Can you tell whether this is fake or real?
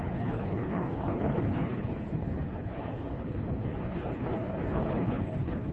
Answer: fake